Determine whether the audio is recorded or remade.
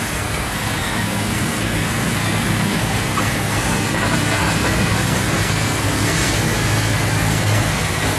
remade